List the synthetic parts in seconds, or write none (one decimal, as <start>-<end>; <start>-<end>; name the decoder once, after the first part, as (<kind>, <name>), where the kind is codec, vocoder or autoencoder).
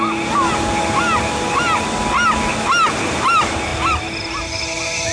none